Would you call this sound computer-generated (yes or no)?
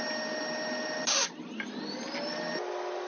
no